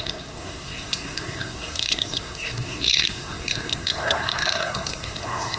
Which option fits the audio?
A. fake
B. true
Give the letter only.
A